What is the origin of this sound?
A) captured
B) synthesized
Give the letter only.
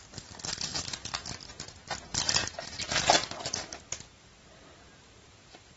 A